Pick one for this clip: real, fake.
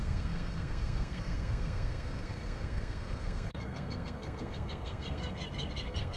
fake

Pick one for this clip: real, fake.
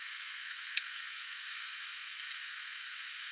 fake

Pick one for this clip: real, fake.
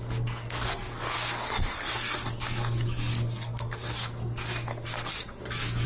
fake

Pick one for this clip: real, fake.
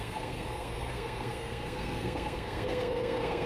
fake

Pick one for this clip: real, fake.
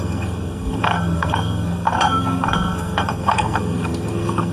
fake